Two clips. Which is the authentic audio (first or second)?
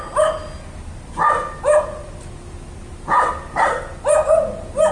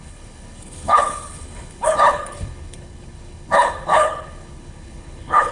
first